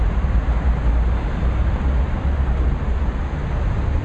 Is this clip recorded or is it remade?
recorded